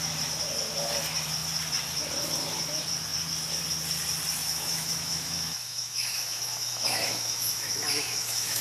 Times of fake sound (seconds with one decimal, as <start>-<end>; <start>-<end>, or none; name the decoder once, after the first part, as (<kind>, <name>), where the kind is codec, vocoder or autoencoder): 4.4-8.6 (autoencoder, DAC-VAE)